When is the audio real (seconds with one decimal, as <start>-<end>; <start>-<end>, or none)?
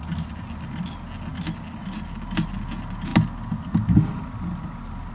0.0-5.1